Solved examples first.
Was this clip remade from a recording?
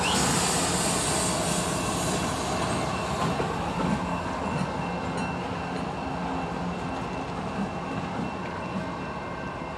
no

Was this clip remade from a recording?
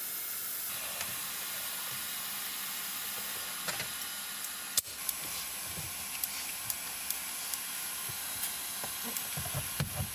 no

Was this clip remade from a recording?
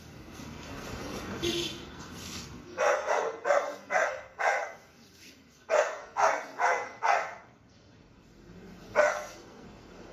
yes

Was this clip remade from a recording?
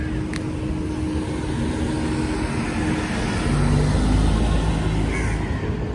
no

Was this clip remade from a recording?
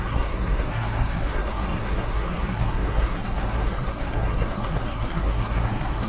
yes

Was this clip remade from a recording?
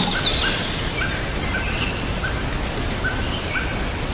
no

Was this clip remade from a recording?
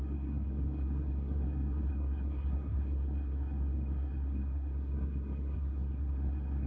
yes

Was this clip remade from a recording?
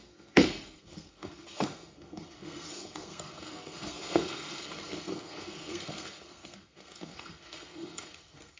yes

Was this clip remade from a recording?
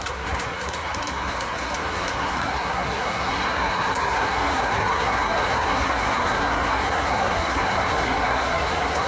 yes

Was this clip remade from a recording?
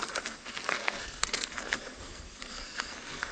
yes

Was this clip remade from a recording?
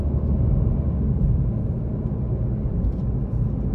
no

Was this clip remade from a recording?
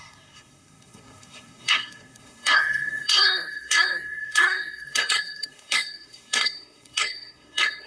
yes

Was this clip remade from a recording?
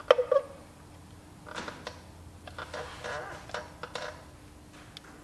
no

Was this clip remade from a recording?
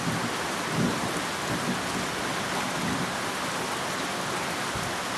no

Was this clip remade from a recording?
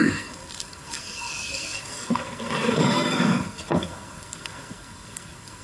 yes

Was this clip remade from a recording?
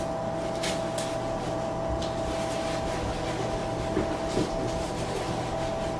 no